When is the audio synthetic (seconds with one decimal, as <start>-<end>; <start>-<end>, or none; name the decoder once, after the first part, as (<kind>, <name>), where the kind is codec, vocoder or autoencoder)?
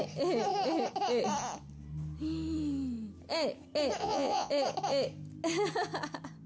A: 4.0-4.5 (vocoder, Vocos)